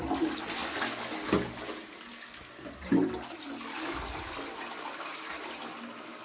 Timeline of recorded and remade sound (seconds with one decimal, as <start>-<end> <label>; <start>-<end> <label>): 0.0-6.2 recorded